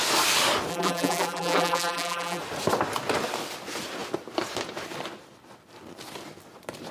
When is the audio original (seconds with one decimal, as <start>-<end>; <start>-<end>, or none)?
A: 0.0-0.7; 2.4-6.9